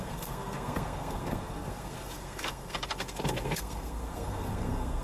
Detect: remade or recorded remade